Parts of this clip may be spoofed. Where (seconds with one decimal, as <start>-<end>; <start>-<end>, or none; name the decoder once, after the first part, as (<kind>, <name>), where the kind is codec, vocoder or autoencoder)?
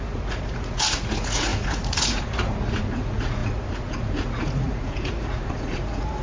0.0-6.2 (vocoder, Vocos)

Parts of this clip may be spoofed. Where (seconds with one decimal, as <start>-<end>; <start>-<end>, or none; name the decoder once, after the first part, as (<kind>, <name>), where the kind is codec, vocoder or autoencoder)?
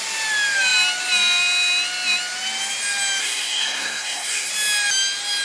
3.2-4.5 (codec, SNAC)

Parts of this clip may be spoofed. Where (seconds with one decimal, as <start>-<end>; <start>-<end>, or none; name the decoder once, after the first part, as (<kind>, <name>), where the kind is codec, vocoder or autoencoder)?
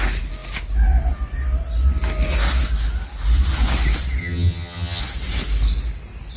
4.2-5.0 (vocoder, HiFi-GAN)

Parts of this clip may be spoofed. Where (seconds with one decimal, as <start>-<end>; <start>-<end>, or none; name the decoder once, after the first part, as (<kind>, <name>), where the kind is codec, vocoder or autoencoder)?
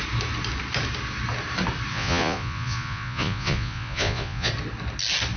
1.9-4.5 (vocoder, Vocos)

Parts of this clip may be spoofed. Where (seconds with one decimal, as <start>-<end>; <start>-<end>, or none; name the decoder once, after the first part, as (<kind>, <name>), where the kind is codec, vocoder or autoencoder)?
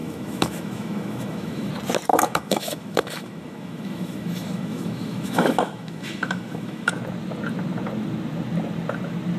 0.0-1.7 (autoencoder, DAC-VAE); 2.1-6.9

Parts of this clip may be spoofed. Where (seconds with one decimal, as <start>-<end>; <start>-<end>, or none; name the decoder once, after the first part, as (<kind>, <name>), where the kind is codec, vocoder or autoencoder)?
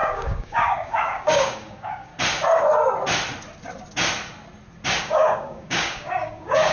0.0-2.1 (codec, DAC); 5.0-6.7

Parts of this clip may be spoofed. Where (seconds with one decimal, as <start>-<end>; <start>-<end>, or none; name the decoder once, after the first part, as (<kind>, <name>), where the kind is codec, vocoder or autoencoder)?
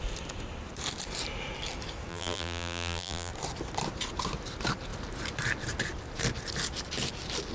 2.1-3.3 (vocoder, BigVGAN v2)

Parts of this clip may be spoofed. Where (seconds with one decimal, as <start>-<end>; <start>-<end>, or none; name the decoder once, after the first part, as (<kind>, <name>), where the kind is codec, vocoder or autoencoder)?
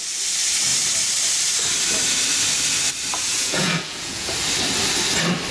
3.3-4.3 (vocoder, Vocos)